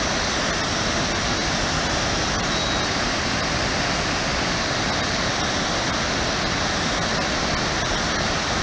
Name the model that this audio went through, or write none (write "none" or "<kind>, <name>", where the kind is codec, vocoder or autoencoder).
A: none